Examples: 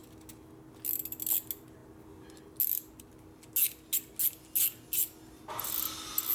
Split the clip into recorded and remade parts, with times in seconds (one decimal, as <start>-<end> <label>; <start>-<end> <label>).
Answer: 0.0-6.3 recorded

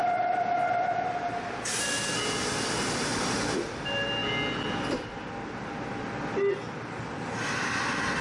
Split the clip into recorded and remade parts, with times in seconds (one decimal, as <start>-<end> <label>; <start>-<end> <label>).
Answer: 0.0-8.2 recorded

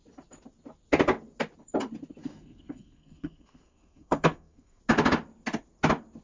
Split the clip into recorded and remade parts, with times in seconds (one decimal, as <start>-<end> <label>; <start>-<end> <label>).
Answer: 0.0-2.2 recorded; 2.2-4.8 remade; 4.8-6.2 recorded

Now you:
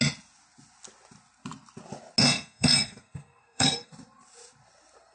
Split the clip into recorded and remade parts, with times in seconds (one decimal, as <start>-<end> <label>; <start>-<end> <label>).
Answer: 0.0-2.2 recorded; 2.2-3.9 remade; 3.9-5.1 recorded

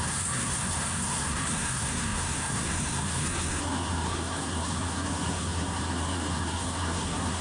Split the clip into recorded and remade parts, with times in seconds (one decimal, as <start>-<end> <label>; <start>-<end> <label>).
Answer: 0.0-7.4 remade

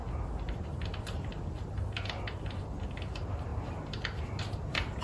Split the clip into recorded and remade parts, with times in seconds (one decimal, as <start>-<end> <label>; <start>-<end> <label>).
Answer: 0.0-5.0 recorded